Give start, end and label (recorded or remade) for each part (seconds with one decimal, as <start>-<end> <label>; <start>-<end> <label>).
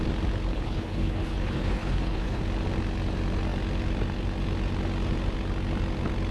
0.0-0.5 recorded; 0.5-2.4 remade; 2.4-6.3 recorded